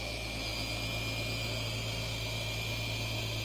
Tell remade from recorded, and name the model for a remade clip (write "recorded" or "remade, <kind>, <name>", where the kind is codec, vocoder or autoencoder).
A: recorded